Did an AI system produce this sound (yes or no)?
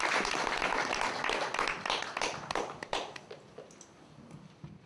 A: no